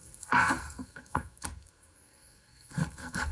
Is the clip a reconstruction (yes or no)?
yes